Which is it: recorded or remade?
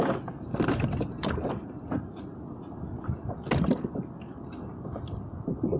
recorded